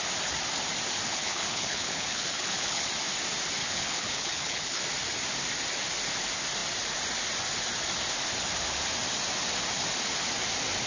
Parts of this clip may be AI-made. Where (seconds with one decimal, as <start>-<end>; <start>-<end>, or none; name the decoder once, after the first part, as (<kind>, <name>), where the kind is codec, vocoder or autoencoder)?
1.1-2.9 (codec, HILCodec); 3.6-4.8